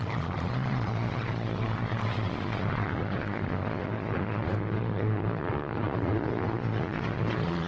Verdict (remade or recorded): remade